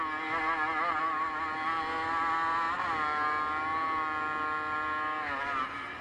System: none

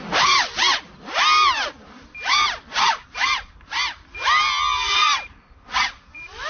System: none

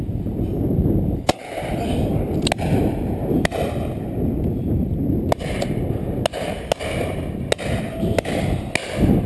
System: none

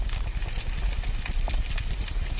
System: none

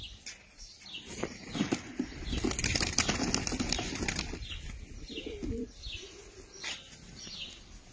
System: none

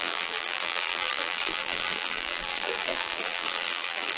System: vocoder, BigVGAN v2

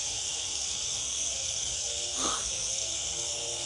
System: codec, SNAC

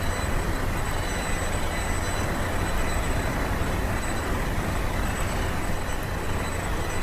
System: none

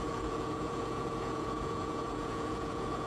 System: vocoder, Vocos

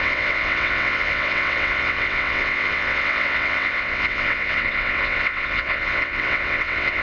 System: vocoder, WaveNeXt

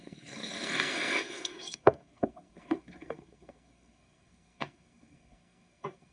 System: codec, SNAC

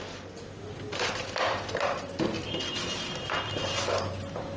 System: none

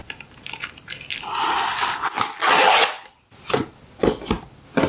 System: none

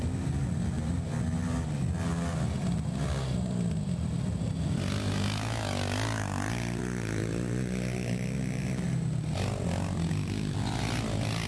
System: none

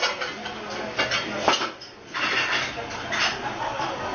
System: none